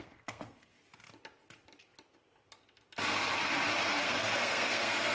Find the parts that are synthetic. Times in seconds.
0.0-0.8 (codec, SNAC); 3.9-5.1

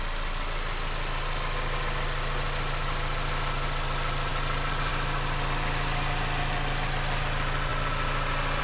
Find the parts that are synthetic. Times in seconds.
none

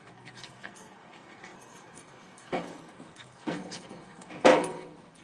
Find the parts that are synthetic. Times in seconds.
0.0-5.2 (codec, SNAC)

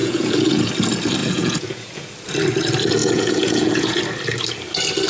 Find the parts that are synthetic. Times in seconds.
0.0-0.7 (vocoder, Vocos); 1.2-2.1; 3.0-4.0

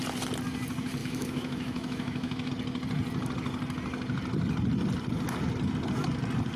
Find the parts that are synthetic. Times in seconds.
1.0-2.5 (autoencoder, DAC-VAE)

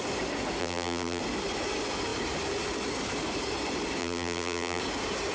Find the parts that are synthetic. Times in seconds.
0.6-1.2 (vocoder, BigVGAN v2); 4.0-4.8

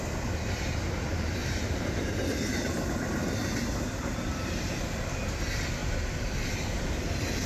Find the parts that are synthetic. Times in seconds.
1.4-2.1 (vocoder, BigVGAN v2)

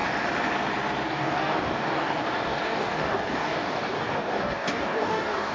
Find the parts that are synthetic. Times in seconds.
1.1-5.5 (codec, DAC)